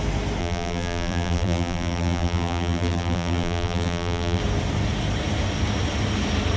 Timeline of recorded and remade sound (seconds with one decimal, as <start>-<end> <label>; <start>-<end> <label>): 0.0-0.4 recorded; 0.4-4.4 remade; 4.4-6.6 recorded